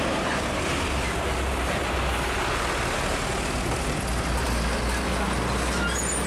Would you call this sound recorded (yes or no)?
yes